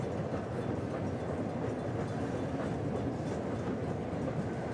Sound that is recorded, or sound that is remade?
recorded